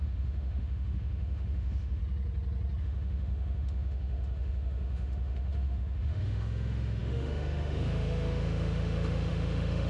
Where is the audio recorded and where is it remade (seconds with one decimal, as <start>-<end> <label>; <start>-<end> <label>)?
0.0-2.0 remade; 2.0-2.8 recorded; 2.8-9.9 remade

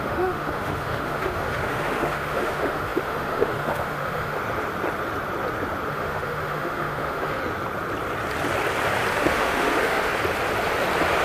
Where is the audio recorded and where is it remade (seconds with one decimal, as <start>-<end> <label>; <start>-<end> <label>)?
0.0-4.4 remade; 4.4-5.9 recorded; 5.9-7.4 remade; 7.4-9.1 recorded; 9.1-10.1 remade; 10.1-11.2 recorded

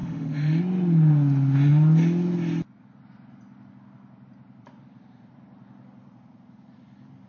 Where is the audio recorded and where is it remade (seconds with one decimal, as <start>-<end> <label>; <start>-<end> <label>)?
0.0-0.6 remade; 0.6-7.3 recorded

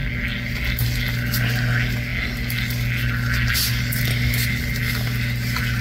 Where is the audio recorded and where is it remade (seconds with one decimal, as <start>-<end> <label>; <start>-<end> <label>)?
0.0-5.8 recorded

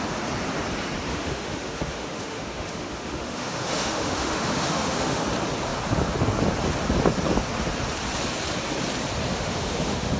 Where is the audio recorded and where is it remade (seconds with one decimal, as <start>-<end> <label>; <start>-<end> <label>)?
0.0-1.1 recorded; 1.1-5.2 remade; 5.2-9.3 recorded; 9.3-10.2 remade

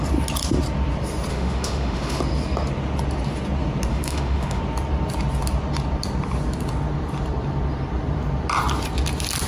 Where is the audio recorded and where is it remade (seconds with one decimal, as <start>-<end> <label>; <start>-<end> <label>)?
0.0-1.3 recorded; 1.3-2.2 remade; 2.2-3.9 recorded; 3.9-4.6 remade; 4.6-9.5 recorded

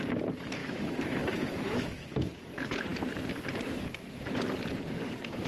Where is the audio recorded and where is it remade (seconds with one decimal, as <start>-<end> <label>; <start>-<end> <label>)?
0.0-0.6 recorded; 0.6-2.4 remade; 2.4-5.5 recorded